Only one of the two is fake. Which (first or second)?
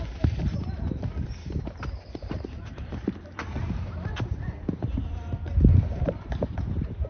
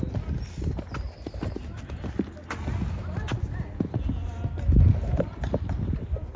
first